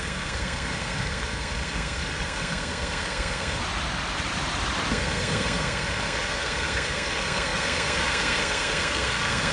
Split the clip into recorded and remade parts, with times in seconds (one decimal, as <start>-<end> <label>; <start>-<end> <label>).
0.0-3.6 remade; 3.6-4.9 recorded; 4.9-9.5 remade